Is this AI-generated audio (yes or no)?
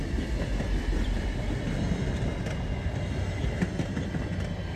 no